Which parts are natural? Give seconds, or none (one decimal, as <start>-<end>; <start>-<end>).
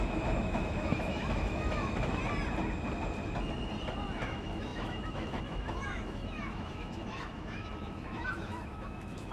2.2-4.2